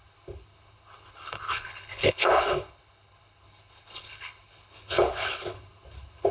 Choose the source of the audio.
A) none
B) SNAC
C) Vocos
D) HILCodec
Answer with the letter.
D